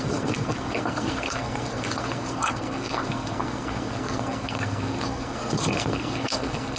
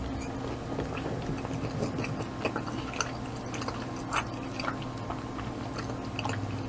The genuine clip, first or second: second